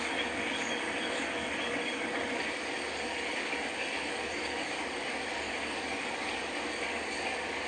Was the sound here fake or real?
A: fake